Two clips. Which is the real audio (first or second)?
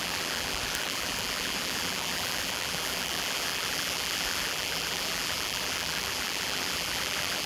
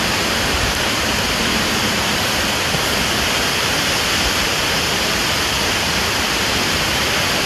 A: second